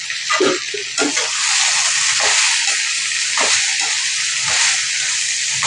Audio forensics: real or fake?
real